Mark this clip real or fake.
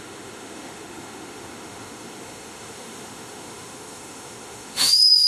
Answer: fake